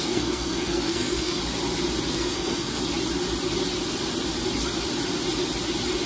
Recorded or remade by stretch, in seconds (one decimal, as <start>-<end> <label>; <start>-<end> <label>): 0.0-1.4 remade; 1.4-2.1 recorded; 2.1-2.8 remade; 2.8-6.1 recorded